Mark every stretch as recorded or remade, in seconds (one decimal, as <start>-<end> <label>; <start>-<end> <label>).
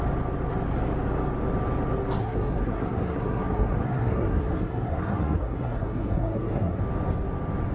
0.0-2.2 recorded; 2.2-6.8 remade; 6.8-7.7 recorded